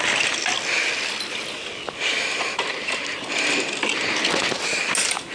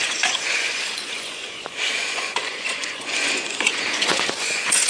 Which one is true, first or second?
first